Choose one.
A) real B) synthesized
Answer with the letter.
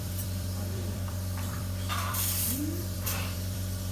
B